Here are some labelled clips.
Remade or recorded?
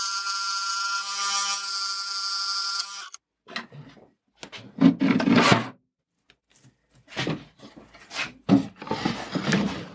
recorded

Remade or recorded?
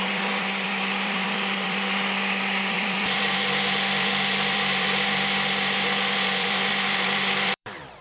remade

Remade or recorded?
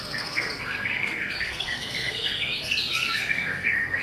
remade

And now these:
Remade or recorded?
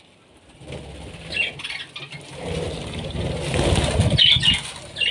recorded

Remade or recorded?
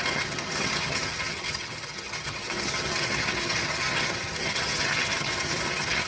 remade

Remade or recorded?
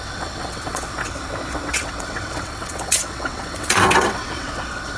remade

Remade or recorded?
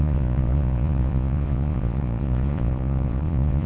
remade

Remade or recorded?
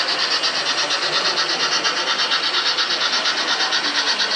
recorded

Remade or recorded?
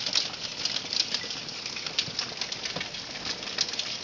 recorded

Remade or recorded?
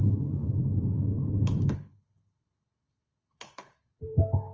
remade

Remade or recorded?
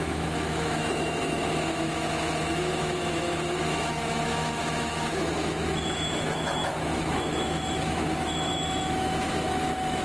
remade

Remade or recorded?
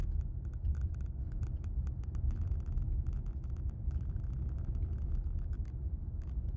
remade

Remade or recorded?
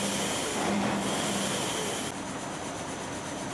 recorded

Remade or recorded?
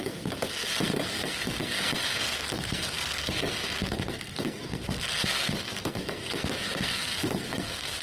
remade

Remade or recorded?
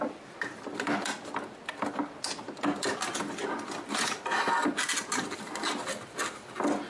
recorded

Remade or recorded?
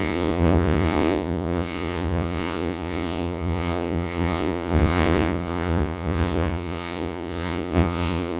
remade